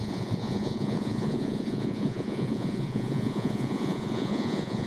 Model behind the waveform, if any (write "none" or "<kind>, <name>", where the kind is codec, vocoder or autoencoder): vocoder, Vocos